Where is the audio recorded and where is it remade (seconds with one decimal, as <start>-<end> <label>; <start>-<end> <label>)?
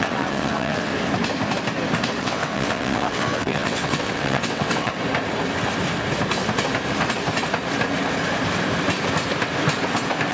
0.0-0.9 remade; 0.9-2.2 recorded; 2.2-4.9 remade; 4.9-10.3 recorded